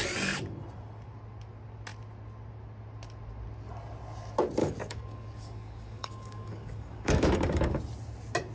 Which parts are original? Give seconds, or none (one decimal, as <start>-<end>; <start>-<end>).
0.0-4.6; 7.8-8.5